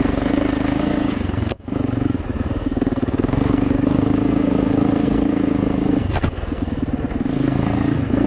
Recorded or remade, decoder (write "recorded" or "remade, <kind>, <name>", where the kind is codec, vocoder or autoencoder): remade, codec, SNAC